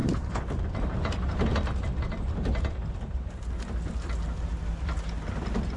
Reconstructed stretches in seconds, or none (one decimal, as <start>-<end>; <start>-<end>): none